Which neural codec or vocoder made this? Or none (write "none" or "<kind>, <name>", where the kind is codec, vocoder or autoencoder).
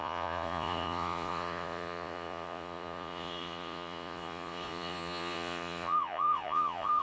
vocoder, Vocos